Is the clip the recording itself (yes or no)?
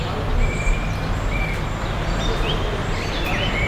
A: yes